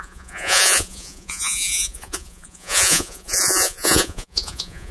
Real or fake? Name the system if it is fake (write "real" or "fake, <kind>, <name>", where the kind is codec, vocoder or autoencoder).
fake, vocoder, Vocos